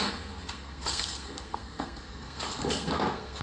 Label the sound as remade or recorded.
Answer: remade